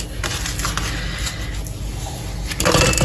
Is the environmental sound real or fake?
real